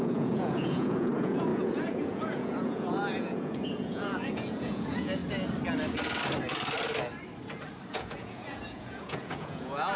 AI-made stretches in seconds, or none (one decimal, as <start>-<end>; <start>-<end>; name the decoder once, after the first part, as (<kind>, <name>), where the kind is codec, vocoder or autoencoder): 0.0-5.2 (vocoder, Vocos); 7.9-10.0